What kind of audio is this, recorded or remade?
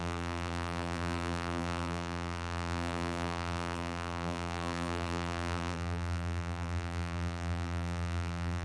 remade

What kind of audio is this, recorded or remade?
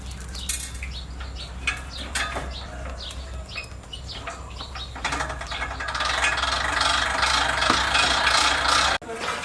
recorded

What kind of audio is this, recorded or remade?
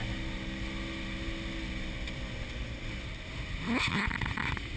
recorded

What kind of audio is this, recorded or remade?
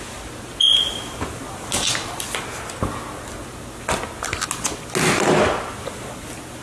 recorded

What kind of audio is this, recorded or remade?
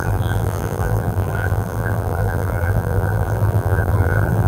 remade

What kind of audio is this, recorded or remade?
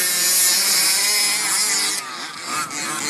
recorded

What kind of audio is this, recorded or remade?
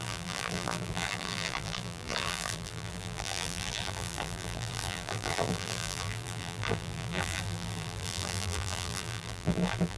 remade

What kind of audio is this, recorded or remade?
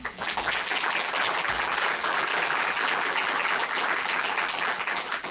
remade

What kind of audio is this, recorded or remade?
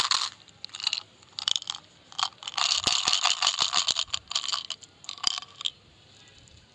remade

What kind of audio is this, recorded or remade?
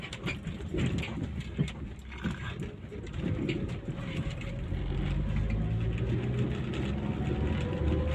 recorded